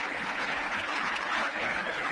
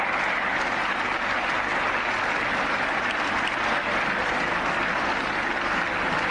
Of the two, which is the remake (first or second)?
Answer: first